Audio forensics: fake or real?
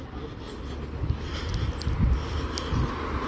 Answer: real